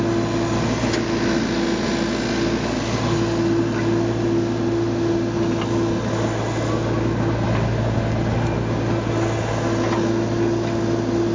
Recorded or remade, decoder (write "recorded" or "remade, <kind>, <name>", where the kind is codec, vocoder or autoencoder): recorded